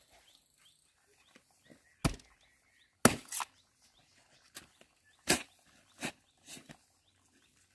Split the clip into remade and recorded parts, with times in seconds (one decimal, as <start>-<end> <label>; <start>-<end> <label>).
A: 0.0-7.7 recorded